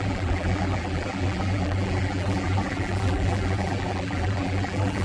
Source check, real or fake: fake